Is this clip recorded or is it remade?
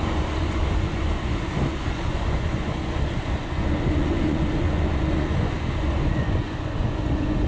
remade